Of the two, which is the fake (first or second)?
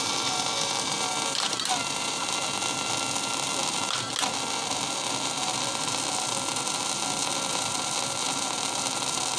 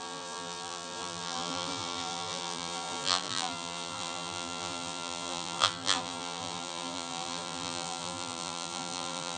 second